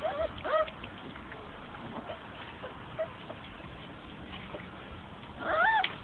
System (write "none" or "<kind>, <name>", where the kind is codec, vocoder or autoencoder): vocoder, BigVGAN v2